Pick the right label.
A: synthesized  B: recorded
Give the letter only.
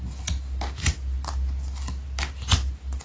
B